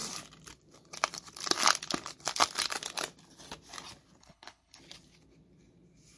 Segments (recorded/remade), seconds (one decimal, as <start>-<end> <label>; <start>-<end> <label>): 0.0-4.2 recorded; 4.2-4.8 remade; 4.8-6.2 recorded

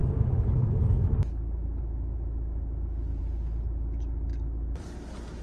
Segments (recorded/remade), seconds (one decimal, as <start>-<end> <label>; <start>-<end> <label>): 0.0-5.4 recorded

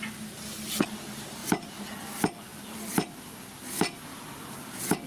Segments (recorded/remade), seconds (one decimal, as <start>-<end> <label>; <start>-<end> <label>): 0.0-2.5 recorded; 2.5-3.3 remade; 3.3-5.1 recorded

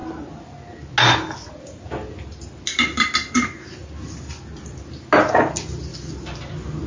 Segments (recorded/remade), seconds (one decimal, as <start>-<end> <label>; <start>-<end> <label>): 0.0-6.9 recorded

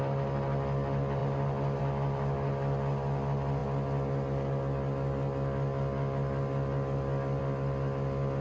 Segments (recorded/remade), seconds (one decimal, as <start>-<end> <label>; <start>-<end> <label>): 0.0-8.4 recorded